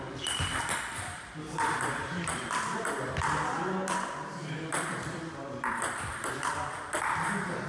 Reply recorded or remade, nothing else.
remade